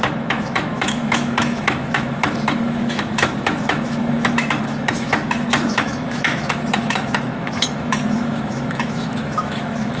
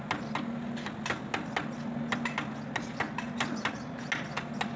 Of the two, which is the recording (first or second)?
second